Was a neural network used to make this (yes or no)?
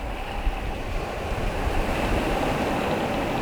no